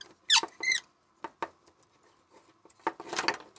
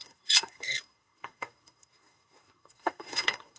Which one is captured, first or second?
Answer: first